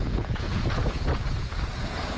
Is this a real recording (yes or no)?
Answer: no